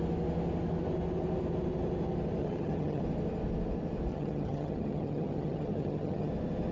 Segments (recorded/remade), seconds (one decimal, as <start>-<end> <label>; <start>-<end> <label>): 0.0-2.4 recorded; 2.4-3.0 remade; 3.0-4.1 recorded; 4.1-6.3 remade; 6.3-6.7 recorded